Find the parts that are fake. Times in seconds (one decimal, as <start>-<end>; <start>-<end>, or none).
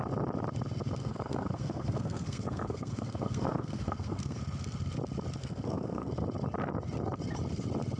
1.0-4.4; 5.4-6.1